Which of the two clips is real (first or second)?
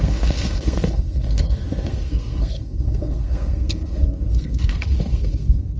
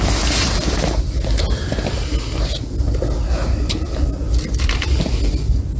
second